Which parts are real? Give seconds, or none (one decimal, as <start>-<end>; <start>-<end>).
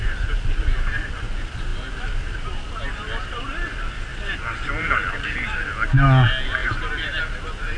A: 0.0-7.8